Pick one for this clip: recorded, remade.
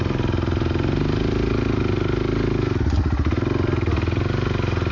recorded